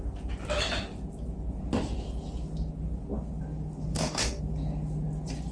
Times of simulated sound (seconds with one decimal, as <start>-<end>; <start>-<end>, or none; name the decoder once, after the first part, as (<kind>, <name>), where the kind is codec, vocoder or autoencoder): 3.9-4.4 (codec, DAC)